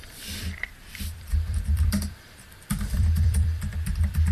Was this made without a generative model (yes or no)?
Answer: no